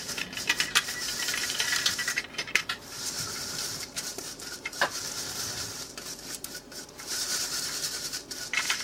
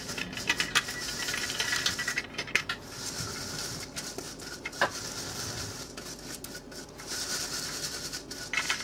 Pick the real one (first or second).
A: second